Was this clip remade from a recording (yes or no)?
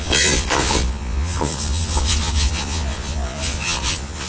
yes